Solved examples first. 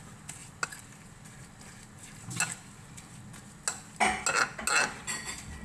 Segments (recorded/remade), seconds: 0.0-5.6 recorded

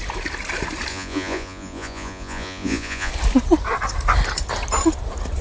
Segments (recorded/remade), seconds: 0.0-0.9 recorded; 0.9-3.1 remade; 3.1-5.4 recorded

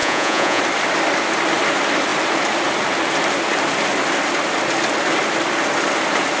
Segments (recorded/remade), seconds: 0.0-0.6 remade; 0.6-6.4 recorded

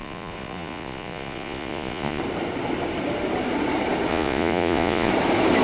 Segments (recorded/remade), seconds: 0.0-2.2 remade; 2.2-4.1 recorded; 4.1-5.1 remade; 5.1-5.6 recorded

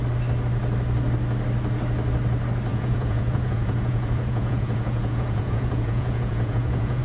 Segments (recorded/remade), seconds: 0.0-2.7 recorded; 2.7-7.0 remade

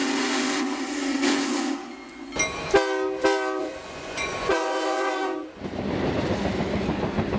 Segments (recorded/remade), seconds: 0.0-2.3 remade; 2.3-3.6 recorded; 3.6-5.6 remade; 5.6-7.4 recorded

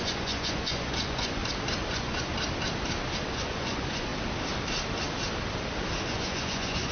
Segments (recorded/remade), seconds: 0.0-1.4 remade; 1.4-1.9 recorded; 1.9-2.3 remade; 2.3-3.3 recorded; 3.3-4.1 remade; 4.1-6.1 recorded; 6.1-6.9 remade